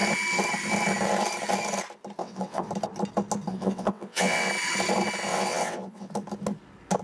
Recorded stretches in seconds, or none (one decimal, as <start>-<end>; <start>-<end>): 0.0-2.2; 2.7-3.5; 4.5-5.3; 6.1-7.0